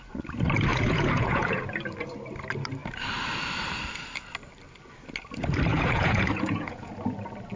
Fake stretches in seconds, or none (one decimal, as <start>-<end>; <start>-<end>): 0.7-1.6; 5.7-6.9